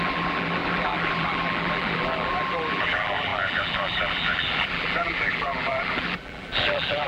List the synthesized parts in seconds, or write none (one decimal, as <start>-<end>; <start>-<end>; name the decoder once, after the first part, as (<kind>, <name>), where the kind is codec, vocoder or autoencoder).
0.0-7.1 (vocoder, BigVGAN v2)